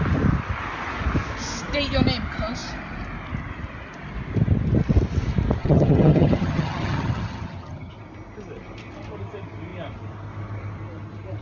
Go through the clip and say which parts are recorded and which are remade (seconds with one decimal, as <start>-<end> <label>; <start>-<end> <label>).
0.0-5.6 recorded; 5.6-7.9 remade; 7.9-11.4 recorded